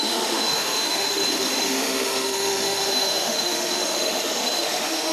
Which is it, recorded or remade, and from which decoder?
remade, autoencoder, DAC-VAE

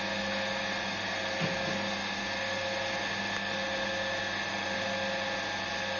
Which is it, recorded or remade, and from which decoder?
recorded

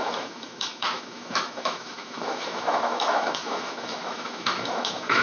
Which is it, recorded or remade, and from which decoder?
remade, autoencoder, DAC-VAE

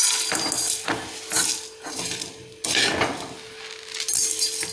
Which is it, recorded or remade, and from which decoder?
recorded